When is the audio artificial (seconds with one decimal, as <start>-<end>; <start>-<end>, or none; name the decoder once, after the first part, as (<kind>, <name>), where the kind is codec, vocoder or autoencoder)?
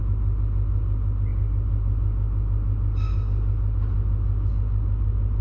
none